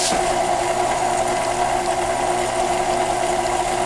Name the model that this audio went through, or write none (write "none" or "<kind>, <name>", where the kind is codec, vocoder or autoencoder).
none